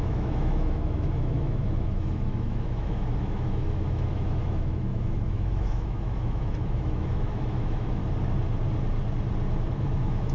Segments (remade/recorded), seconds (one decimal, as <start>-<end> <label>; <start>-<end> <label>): 0.0-8.0 remade; 8.0-9.7 recorded; 9.7-10.3 remade